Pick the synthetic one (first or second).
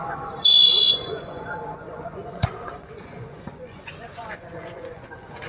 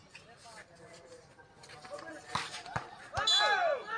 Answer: first